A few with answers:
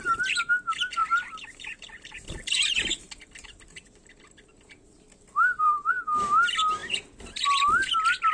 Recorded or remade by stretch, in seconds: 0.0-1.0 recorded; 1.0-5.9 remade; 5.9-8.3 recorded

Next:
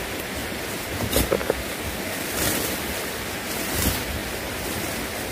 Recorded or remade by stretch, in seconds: 0.0-1.4 recorded; 1.4-2.3 remade; 2.3-5.3 recorded

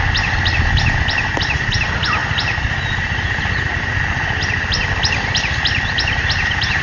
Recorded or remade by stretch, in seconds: 0.0-6.8 recorded

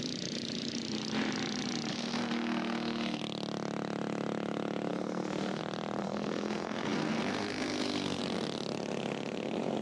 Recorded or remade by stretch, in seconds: 0.0-1.9 recorded; 1.9-3.2 remade; 3.2-4.9 recorded; 4.9-5.6 remade; 5.6-6.0 recorded; 6.0-8.2 remade; 8.2-9.8 recorded

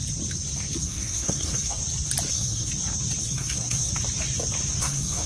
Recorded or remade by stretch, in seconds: 0.0-0.8 recorded; 0.8-1.8 remade; 1.8-2.3 recorded; 2.3-2.7 remade; 2.7-3.2 recorded; 3.2-3.9 remade; 3.9-4.8 recorded; 4.8-5.3 remade

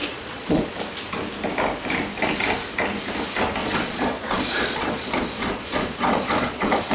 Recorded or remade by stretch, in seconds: 0.0-0.7 remade; 0.7-3.6 recorded; 3.6-6.9 remade

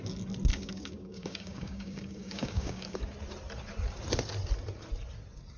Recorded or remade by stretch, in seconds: 0.0-0.5 recorded; 0.5-3.0 remade; 3.0-5.6 recorded